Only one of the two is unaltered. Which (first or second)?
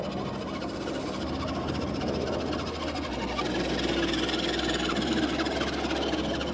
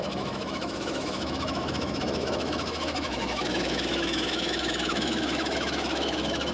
first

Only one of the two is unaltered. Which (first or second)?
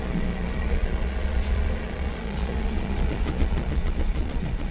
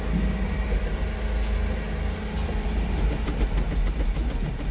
second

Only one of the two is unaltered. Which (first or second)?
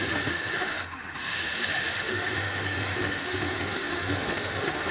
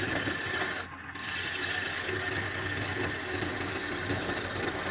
second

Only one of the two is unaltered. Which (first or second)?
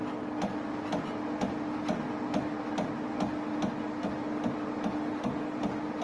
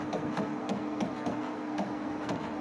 first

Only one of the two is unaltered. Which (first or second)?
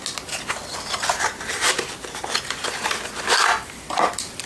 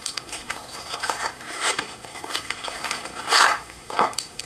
first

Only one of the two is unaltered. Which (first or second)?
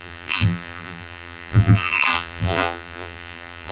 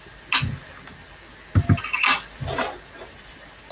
second